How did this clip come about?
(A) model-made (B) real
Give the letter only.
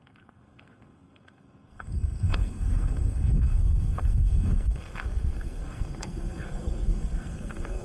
A